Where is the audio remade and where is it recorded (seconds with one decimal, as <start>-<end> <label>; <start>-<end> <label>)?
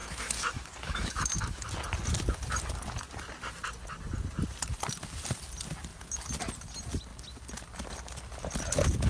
0.0-1.7 remade; 1.7-9.1 recorded